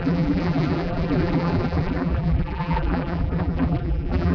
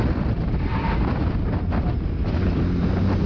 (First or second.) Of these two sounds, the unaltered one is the second